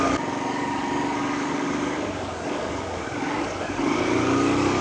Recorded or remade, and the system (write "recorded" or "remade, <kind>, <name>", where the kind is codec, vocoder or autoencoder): remade, codec, DAC